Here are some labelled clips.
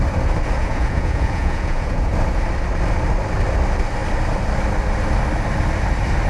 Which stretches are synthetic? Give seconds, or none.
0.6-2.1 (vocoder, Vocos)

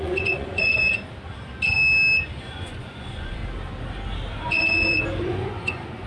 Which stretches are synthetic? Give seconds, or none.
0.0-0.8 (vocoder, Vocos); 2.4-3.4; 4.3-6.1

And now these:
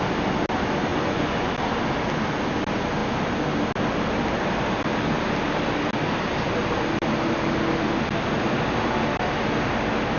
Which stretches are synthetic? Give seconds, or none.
0.9-1.5 (vocoder, Vocos)